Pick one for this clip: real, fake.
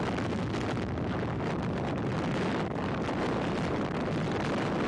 real